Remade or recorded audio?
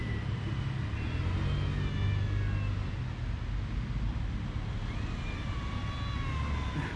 recorded